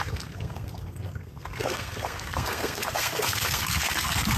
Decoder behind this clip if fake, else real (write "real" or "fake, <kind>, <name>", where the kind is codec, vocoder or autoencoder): fake, codec, SNAC